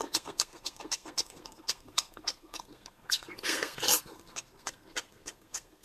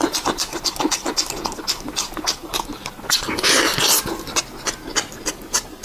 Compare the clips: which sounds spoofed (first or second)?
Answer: first